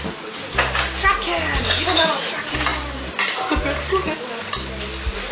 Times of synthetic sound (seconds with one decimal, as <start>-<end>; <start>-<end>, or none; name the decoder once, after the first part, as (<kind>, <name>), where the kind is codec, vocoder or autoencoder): none